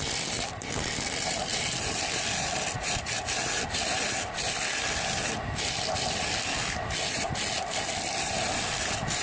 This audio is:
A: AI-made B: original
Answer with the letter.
B